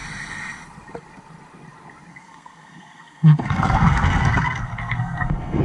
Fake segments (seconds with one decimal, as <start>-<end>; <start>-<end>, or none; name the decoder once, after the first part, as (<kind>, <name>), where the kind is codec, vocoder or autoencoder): 2.1-5.6 (codec, SNAC)